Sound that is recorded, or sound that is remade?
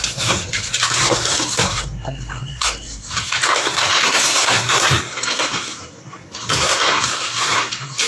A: remade